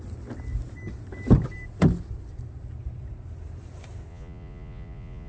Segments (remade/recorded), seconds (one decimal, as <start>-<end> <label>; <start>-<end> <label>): 0.0-4.1 recorded; 4.1-5.3 remade